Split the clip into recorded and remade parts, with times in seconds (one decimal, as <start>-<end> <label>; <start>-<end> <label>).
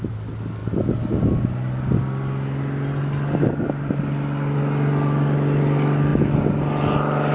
0.0-7.3 recorded